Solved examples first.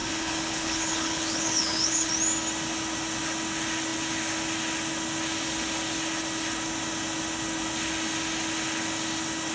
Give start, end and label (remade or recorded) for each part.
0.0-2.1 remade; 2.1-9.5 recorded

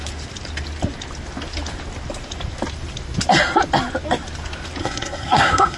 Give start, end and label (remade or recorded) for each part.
0.0-4.8 recorded; 4.8-5.8 remade